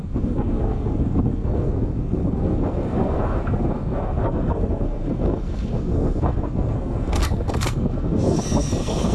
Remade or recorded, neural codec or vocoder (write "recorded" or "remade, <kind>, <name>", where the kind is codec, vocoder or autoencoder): remade, codec, SNAC